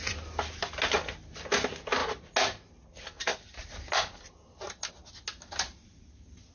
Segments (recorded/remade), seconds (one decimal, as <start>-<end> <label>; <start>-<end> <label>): 0.0-6.5 recorded